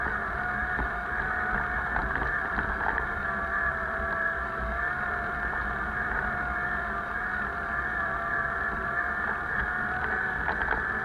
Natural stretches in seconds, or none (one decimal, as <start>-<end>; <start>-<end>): 0.0-0.6; 1.1-2.0; 5.5-8.3; 9.6-11.0